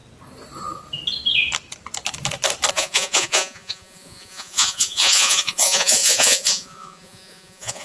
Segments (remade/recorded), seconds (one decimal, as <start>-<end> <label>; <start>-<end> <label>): 0.0-2.7 recorded; 2.7-7.8 remade